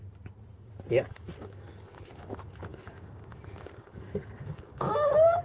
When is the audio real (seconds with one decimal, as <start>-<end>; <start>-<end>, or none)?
0.0-1.4; 2.3-2.7; 4.9-5.4